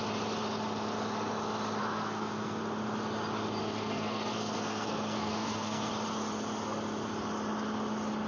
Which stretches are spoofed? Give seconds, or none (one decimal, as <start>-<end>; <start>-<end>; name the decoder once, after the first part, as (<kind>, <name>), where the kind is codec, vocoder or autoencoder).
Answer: 1.8-2.6 (codec, SNAC); 3.6-5.9